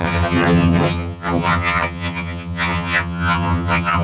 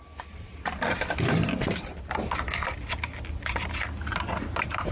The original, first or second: second